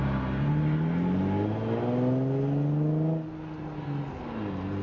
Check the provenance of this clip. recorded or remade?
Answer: recorded